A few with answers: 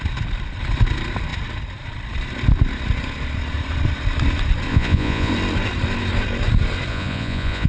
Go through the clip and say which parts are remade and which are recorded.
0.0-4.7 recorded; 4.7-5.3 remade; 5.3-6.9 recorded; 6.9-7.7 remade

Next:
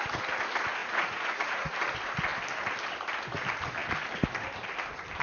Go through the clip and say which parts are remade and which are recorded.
0.0-0.8 recorded; 0.8-1.7 remade; 1.7-5.2 recorded

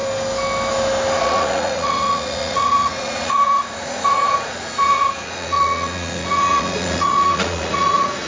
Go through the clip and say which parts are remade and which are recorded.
0.0-1.2 recorded; 1.2-8.3 remade

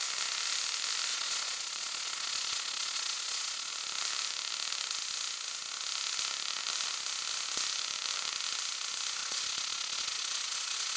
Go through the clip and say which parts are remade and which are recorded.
0.0-1.1 recorded; 1.1-3.7 remade; 3.7-9.2 recorded; 9.2-11.0 remade

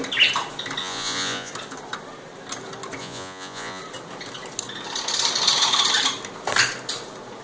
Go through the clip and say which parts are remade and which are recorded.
0.0-0.8 recorded; 0.8-1.5 remade; 1.5-3.0 recorded; 3.0-3.8 remade; 3.8-7.4 recorded

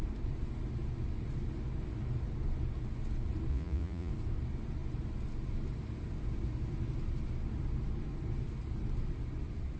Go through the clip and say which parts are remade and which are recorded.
0.0-3.5 recorded; 3.5-4.1 remade; 4.1-9.8 recorded

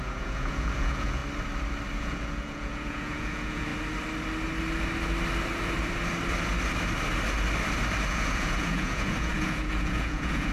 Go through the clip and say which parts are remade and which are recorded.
0.0-1.2 remade; 1.2-2.0 recorded; 2.0-3.7 remade; 3.7-8.1 recorded; 8.1-10.5 remade